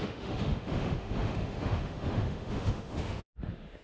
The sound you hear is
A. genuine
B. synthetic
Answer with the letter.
B